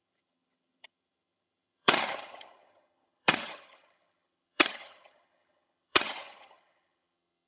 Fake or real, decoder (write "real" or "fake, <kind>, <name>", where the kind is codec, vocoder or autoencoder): fake, vocoder, HiFi-GAN